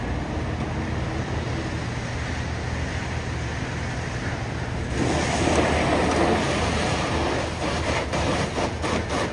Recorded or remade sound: recorded